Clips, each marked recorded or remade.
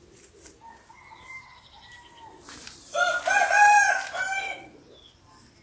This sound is recorded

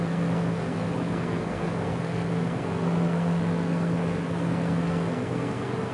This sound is remade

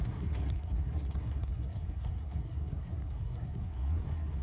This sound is remade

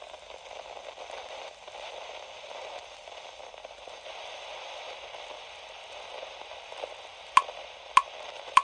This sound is recorded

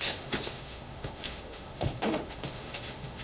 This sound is remade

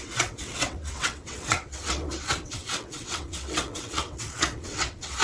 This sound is remade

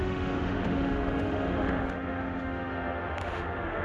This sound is remade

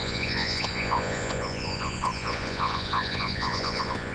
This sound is remade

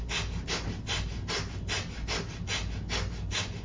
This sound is recorded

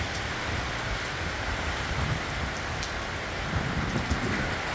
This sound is recorded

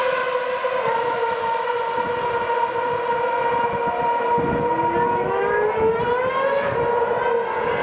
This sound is recorded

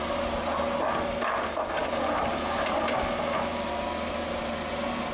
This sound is recorded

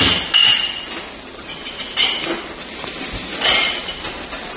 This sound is recorded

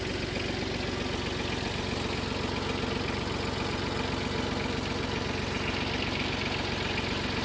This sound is recorded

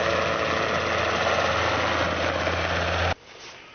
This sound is recorded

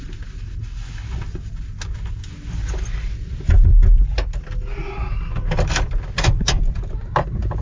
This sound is recorded